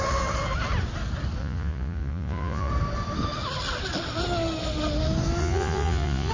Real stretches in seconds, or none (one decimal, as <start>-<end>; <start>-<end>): 0.0-1.4; 2.7-5.4